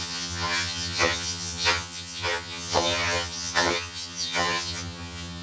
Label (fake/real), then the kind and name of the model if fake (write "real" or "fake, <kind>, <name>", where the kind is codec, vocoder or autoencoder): fake, vocoder, HiFi-GAN